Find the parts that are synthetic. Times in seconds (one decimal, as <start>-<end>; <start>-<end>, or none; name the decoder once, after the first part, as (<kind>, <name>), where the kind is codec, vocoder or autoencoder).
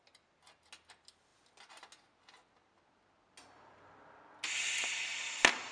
none